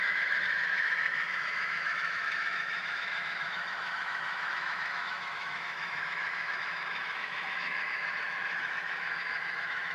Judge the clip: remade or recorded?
remade